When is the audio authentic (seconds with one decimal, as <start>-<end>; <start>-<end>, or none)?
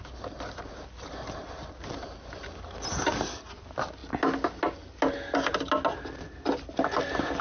0.0-7.4